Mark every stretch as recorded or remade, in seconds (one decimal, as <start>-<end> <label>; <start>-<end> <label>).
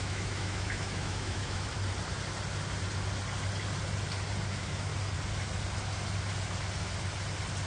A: 0.0-1.7 remade; 1.7-4.5 recorded; 4.5-4.9 remade; 4.9-7.7 recorded